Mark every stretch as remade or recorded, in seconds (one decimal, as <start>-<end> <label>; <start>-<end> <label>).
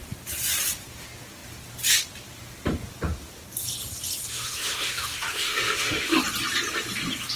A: 0.0-4.3 recorded; 4.3-6.2 remade; 6.2-7.4 recorded